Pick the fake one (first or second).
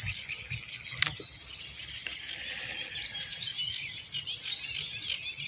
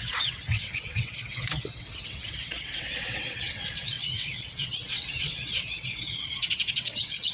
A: second